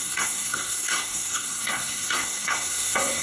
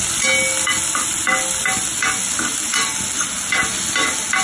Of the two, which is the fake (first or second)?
first